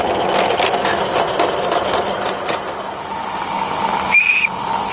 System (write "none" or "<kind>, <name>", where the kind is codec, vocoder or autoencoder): none